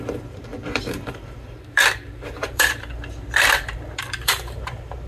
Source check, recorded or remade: remade